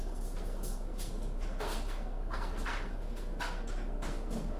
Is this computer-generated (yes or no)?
yes